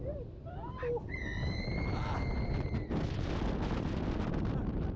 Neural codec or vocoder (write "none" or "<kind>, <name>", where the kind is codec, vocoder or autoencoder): none